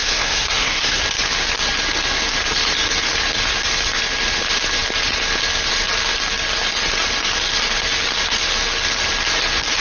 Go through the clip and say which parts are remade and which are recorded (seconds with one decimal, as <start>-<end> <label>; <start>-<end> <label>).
0.0-1.0 remade; 1.0-9.8 recorded